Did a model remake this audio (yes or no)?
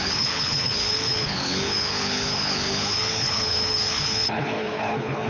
yes